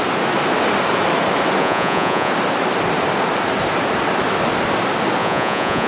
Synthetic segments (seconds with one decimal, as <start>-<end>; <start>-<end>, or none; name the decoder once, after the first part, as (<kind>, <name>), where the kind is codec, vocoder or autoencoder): 1.6-2.3 (vocoder, Vocos); 5.2-5.9